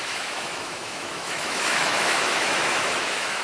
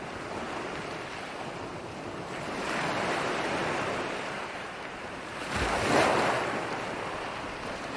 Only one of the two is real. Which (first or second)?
second